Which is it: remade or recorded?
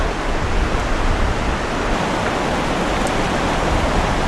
recorded